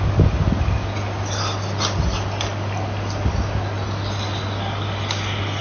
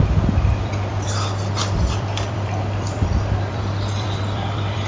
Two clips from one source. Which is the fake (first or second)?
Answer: second